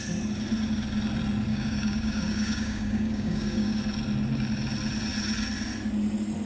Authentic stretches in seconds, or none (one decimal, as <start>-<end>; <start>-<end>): 0.0-1.5; 3.8-6.5